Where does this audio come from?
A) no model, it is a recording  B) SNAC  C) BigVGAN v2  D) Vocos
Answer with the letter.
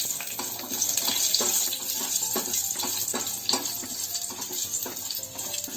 A